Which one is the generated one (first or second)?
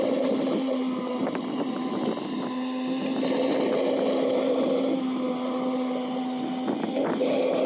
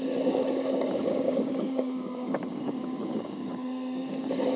second